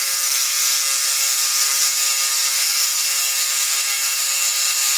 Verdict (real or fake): fake